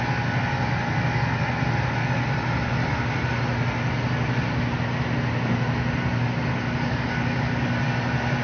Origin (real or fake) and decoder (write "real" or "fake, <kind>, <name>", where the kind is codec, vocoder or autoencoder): real